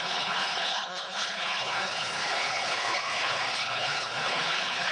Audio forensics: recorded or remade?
remade